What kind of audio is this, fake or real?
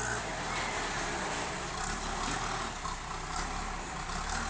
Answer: real